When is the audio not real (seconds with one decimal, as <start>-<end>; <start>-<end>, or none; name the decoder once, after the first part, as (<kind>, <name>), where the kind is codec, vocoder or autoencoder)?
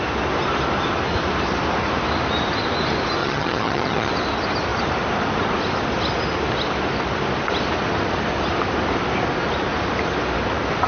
3.2-4.1 (vocoder, HiFi-GAN)